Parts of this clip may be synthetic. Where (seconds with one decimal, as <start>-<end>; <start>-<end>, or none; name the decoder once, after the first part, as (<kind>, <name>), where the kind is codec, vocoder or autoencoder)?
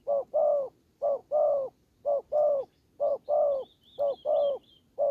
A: none